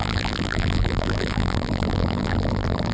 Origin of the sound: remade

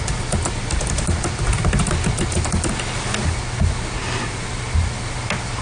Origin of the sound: recorded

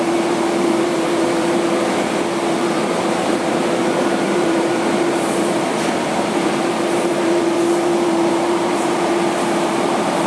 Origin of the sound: remade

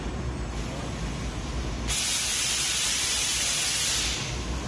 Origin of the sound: recorded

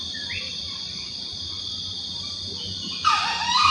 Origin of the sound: remade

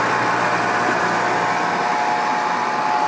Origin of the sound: remade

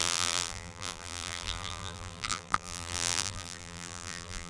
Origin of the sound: remade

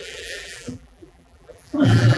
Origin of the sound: remade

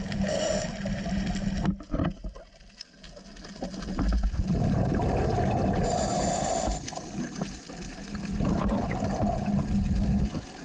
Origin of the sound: recorded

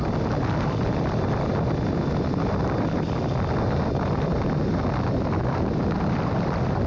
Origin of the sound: recorded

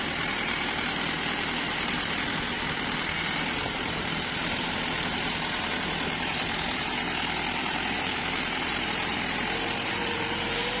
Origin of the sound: remade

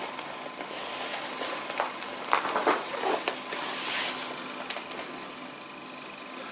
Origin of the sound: recorded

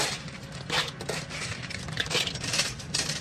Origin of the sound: recorded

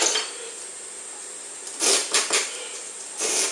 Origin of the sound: recorded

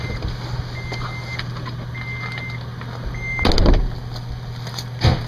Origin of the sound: recorded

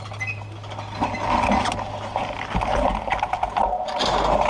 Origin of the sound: recorded